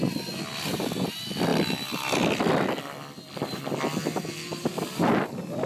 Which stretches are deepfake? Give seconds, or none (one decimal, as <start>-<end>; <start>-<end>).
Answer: 1.5-2.7; 4.0-5.0